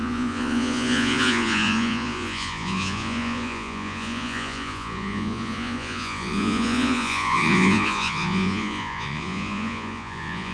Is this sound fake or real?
fake